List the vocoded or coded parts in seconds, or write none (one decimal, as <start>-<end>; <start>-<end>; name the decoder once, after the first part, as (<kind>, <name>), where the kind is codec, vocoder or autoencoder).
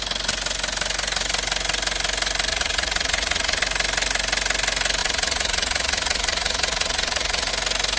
2.5-3.6 (vocoder, Vocos); 5.0-7.5